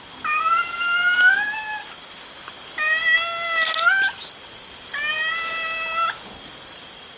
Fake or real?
real